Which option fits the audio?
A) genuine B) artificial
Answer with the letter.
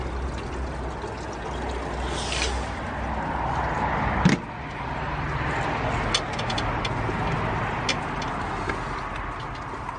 A